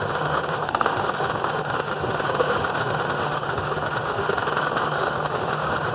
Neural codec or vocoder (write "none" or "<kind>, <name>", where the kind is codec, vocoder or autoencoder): autoencoder, DAC-VAE